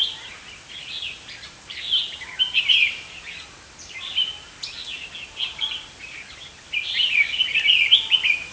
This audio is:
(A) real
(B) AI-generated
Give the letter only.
A